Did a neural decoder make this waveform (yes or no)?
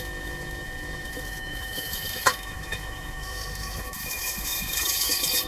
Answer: yes